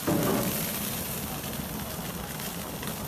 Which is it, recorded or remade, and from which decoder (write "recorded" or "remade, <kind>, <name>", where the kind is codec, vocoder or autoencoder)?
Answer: recorded